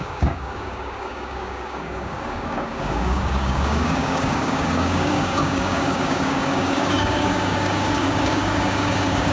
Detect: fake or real fake